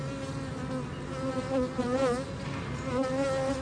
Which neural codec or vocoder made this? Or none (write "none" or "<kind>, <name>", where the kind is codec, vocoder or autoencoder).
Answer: none